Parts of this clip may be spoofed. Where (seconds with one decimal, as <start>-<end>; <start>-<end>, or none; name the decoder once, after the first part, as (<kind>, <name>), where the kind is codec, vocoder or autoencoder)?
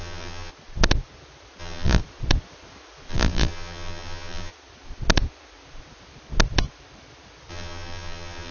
0.0-0.5 (vocoder, BigVGAN v2); 1.6-2.0; 3.1-4.5; 7.5-8.5